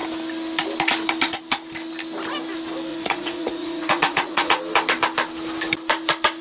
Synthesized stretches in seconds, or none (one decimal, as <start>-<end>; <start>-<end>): 2.9-4.6

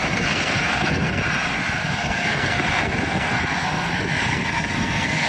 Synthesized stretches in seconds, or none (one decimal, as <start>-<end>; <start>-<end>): 0.0-1.2; 1.8-5.3